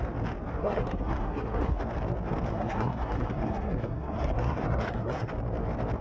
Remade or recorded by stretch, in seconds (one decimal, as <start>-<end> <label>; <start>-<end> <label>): 0.0-0.6 recorded; 0.6-1.8 remade; 1.8-2.5 recorded; 2.5-5.3 remade; 5.3-6.0 recorded